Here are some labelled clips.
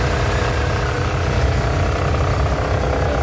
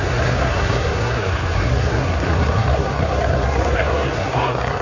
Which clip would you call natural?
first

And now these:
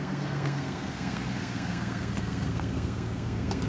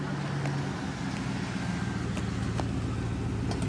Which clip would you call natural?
second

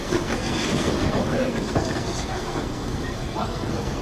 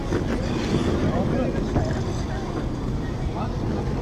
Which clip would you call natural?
second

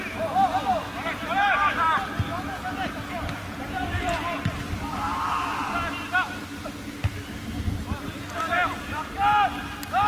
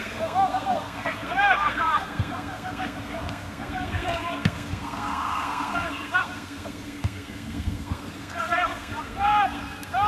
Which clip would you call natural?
first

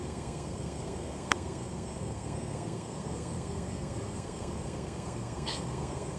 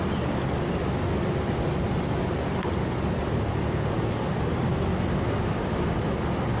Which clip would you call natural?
second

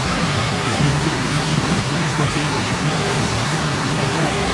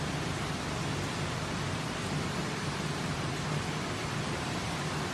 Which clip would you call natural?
second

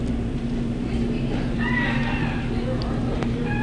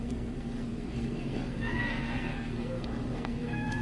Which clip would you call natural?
first